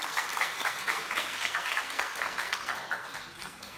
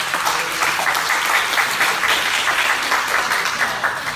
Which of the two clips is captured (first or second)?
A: second